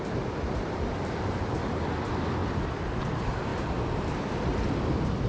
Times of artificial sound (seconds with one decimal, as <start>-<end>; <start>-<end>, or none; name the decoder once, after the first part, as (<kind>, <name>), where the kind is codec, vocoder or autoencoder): none